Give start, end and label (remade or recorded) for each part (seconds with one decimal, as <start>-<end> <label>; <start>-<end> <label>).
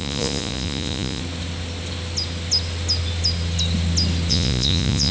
0.0-1.2 remade; 1.2-4.3 recorded; 4.3-5.1 remade